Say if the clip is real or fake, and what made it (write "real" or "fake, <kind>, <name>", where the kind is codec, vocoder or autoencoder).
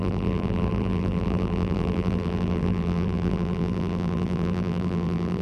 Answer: fake, vocoder, BigVGAN v2